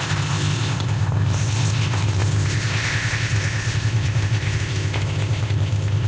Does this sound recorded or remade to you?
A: remade